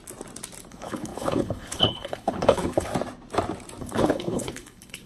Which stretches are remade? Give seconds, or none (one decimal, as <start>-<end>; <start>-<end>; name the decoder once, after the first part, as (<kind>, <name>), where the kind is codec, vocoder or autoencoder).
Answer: 0.7-2.9 (codec, HILCodec); 3.8-5.1